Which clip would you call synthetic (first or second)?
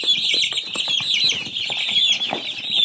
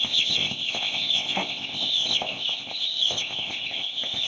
second